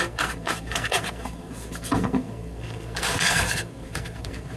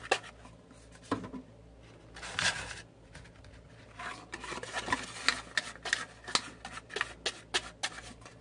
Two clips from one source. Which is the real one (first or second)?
second